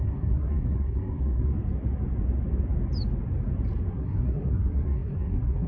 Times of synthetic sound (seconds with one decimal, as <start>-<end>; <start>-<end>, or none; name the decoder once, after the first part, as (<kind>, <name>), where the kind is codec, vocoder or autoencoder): 0.0-1.5 (codec, SNAC); 3.9-5.7